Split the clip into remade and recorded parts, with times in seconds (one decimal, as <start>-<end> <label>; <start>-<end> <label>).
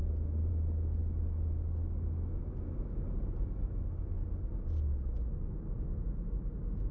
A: 0.0-6.9 recorded